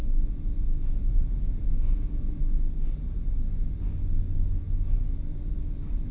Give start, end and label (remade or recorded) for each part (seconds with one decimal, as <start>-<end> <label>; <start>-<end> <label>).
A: 0.0-1.1 recorded; 1.1-2.4 remade; 2.4-4.6 recorded; 4.6-5.1 remade; 5.1-6.1 recorded